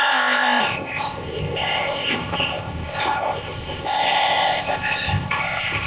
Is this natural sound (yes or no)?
no